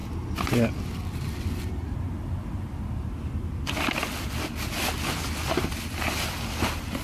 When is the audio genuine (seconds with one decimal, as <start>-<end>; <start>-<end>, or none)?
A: 0.0-7.0